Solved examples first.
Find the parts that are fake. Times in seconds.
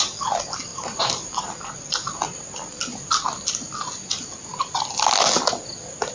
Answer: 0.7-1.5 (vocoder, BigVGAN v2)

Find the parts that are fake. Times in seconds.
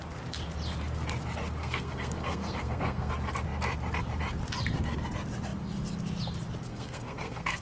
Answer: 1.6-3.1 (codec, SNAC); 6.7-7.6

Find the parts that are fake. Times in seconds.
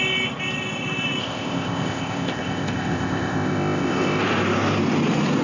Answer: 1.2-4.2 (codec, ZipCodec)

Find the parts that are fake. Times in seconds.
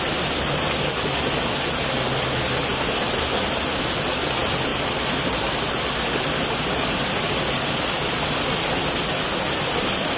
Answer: none